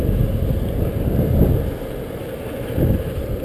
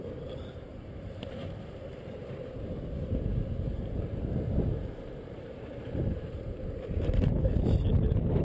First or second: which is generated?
second